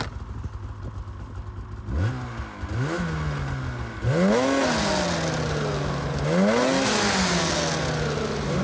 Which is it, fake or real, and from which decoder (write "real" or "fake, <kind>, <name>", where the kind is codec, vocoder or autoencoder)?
real